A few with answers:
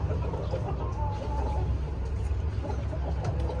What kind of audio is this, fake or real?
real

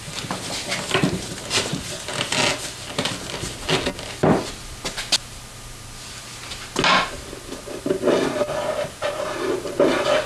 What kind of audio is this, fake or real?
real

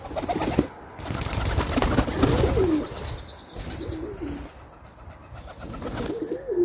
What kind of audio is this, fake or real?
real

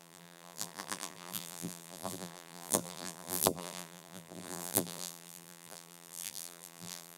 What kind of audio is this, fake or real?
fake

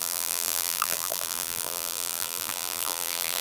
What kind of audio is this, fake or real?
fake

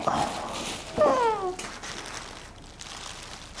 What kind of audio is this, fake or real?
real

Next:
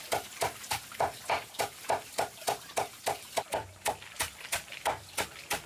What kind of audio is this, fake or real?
fake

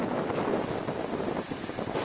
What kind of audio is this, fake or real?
real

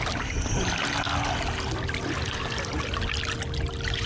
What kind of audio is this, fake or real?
real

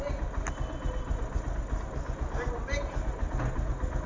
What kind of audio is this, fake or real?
real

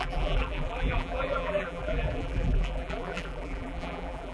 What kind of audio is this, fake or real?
fake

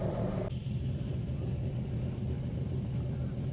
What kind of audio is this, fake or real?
fake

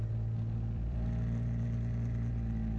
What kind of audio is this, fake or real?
fake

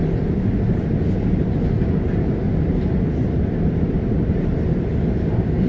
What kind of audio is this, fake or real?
real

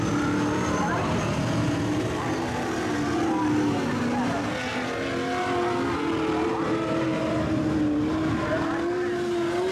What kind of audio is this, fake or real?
real